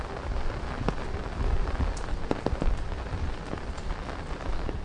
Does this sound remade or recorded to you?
recorded